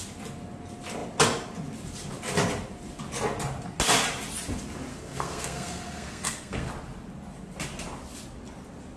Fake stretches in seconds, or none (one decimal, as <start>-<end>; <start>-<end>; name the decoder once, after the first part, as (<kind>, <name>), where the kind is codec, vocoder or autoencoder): 4.9-6.7 (codec, SNAC)